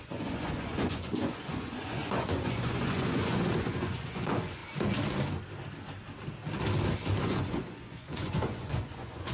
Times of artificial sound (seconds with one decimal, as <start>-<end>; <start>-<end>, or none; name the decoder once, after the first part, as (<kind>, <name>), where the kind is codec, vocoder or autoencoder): 0.0-4.6 (vocoder, Vocos); 7.2-9.3